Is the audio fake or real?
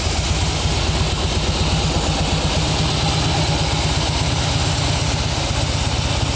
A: real